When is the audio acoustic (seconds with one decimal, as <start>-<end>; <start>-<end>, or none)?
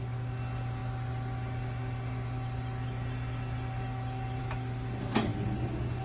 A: 0.0-6.0